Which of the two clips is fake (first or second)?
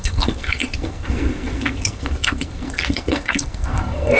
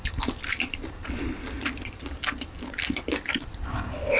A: first